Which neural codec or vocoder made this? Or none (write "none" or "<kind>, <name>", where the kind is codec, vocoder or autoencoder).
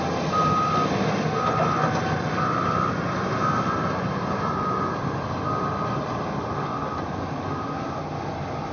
none